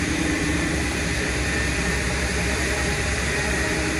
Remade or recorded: remade